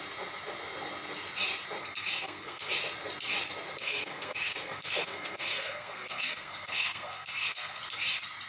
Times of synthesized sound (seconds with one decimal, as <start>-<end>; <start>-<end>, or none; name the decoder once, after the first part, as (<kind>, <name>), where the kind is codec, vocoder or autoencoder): 1.8-2.7 (codec, SNAC); 3.8-7.8